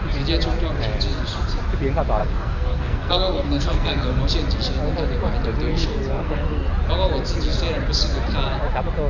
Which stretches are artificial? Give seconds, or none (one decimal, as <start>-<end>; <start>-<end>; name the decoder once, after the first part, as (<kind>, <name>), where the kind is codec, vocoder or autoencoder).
2.2-4.2 (codec, SNAC); 5.7-6.7